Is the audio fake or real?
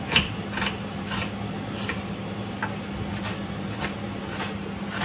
real